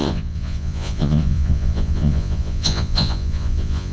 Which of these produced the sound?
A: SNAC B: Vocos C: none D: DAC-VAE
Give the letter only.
B